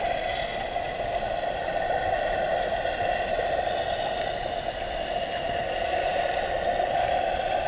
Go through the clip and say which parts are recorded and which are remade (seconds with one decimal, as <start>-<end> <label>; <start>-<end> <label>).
0.0-7.7 recorded